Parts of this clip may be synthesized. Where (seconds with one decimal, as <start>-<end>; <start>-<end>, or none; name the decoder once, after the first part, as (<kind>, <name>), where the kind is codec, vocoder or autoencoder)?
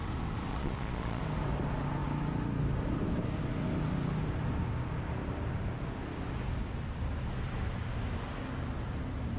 0.5-1.2 (vocoder, Vocos)